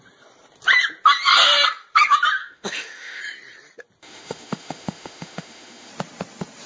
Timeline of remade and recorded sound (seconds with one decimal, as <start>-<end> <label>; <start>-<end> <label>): 0.0-2.4 recorded; 2.4-3.2 remade; 3.2-4.0 recorded; 4.0-5.9 remade; 5.9-6.7 recorded

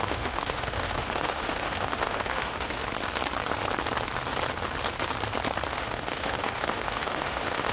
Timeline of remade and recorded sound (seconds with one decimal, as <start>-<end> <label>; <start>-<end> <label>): 0.0-2.8 remade; 2.8-5.7 recorded; 5.7-7.7 remade

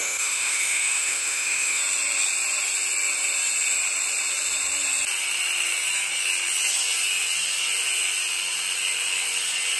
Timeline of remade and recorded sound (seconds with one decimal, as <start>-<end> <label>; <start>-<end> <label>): 0.0-1.8 remade; 1.8-9.8 recorded

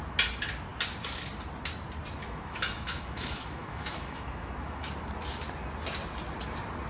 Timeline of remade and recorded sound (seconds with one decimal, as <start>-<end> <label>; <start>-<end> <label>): 0.0-2.2 recorded; 2.2-4.9 remade; 4.9-6.9 recorded